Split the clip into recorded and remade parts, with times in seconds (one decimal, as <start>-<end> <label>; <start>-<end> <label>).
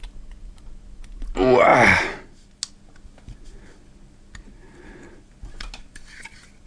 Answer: 0.0-6.7 recorded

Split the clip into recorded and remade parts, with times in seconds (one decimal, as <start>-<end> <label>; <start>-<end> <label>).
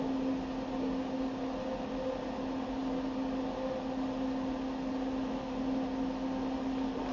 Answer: 0.0-7.1 recorded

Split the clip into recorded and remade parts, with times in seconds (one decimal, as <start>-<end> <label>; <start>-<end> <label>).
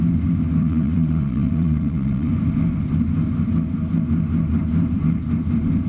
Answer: 0.0-0.6 recorded; 0.6-2.3 remade; 2.3-5.9 recorded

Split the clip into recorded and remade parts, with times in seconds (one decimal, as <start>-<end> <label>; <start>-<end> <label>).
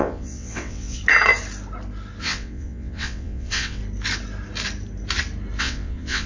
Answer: 0.0-1.0 remade; 1.0-2.2 recorded; 2.2-3.8 remade; 3.8-5.6 recorded; 5.6-6.3 remade